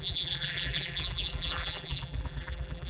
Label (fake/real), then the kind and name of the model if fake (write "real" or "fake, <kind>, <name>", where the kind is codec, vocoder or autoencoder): fake, vocoder, BigVGAN v2